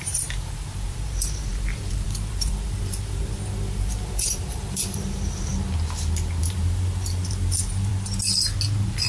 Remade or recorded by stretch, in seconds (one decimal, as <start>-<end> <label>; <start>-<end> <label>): 0.0-5.5 remade; 5.5-6.4 recorded; 6.4-7.9 remade; 7.9-9.1 recorded